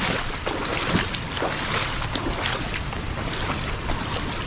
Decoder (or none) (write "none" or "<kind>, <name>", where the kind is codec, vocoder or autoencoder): none